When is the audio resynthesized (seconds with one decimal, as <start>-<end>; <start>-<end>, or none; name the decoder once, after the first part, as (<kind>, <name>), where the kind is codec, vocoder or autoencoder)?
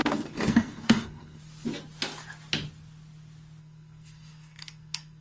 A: 0.0-1.4 (codec, SNAC); 3.6-5.2